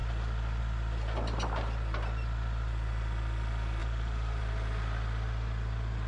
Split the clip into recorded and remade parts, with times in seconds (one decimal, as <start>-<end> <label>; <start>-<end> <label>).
0.0-3.8 recorded; 3.8-4.4 remade; 4.4-6.1 recorded